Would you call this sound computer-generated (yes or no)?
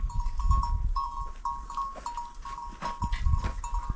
no